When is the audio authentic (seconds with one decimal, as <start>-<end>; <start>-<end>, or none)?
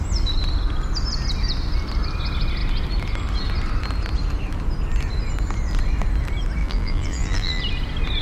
0.0-6.6; 7.6-8.2